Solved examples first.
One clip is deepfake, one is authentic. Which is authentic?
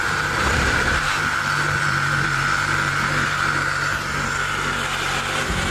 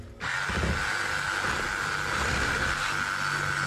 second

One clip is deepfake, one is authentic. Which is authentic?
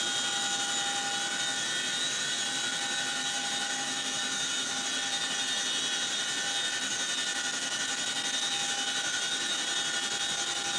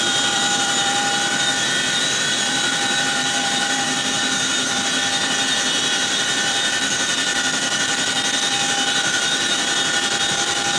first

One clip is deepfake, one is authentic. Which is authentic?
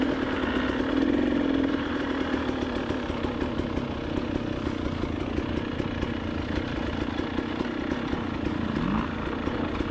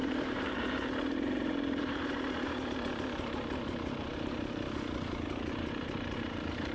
first